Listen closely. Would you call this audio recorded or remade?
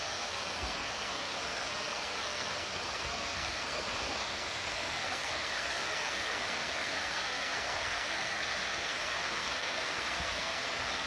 remade